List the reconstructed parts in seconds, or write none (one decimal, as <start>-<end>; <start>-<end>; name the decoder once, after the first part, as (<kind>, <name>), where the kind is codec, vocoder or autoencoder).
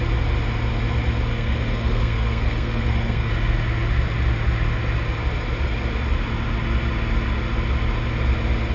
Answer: 1.3-3.3 (codec, SNAC)